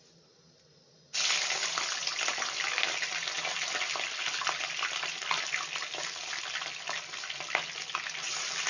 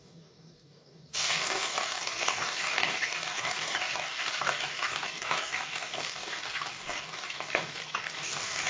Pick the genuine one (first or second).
first